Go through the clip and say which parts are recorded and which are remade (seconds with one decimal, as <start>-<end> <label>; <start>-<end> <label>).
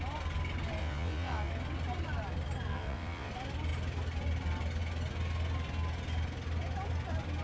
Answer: 0.0-0.8 recorded; 0.8-1.5 remade; 1.5-2.7 recorded; 2.7-3.3 remade; 3.3-7.4 recorded